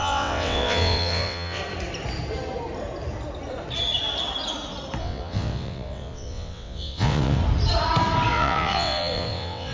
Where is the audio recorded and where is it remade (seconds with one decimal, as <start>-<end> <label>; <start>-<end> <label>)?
0.0-1.6 remade; 1.6-5.0 recorded; 5.0-7.4 remade; 7.4-8.3 recorded; 8.3-9.7 remade